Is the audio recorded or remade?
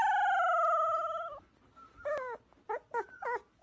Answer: recorded